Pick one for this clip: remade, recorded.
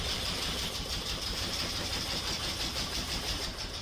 remade